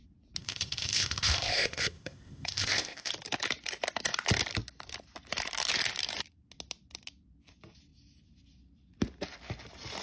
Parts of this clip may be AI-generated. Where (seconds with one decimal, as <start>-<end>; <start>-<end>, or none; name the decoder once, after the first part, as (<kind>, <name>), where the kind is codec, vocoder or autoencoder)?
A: 0.4-3.1 (codec, ZipCodec)